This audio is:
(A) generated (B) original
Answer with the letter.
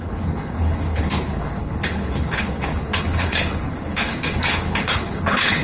A